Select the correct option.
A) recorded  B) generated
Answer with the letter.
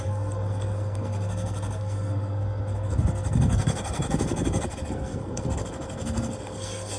B